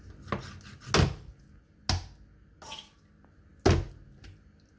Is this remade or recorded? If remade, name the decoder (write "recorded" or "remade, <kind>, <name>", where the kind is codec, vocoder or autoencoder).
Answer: recorded